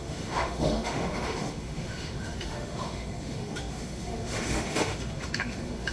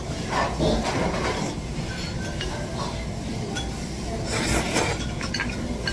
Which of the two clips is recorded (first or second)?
second